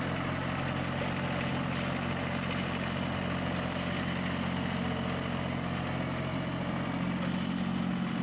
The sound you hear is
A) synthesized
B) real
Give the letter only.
B